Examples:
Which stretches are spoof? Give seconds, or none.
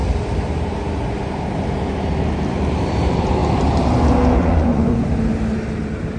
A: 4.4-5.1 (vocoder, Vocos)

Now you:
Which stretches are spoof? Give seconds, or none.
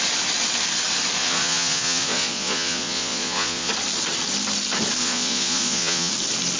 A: 1.2-3.7 (vocoder, Vocos); 5.0-6.1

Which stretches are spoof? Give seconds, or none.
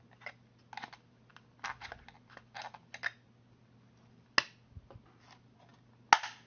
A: none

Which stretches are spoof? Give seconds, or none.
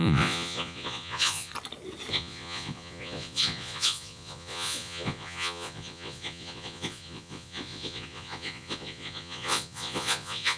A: 0.0-1.5 (vocoder, Vocos); 2.1-10.6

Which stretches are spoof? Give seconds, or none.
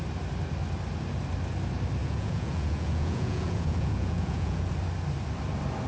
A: 2.0-4.7 (vocoder, Vocos)